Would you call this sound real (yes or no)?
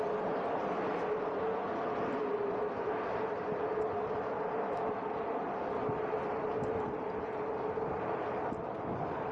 yes